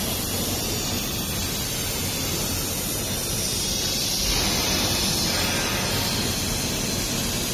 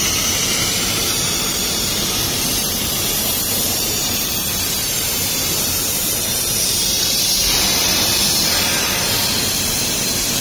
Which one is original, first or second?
first